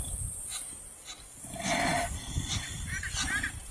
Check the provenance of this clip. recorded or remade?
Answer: recorded